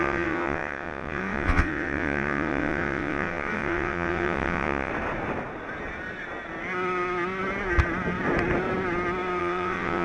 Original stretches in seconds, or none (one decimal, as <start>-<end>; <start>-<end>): 4.9-9.4